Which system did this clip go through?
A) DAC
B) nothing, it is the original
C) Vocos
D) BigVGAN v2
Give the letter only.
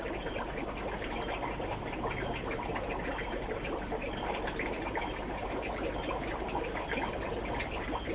B